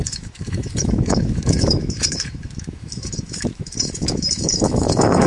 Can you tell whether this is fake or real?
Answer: fake